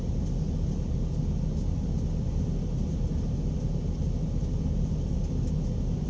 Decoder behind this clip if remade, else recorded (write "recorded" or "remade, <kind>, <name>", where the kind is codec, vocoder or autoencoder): recorded